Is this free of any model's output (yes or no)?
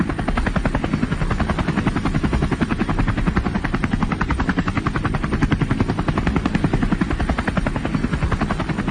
yes